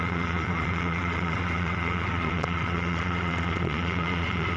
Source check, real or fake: fake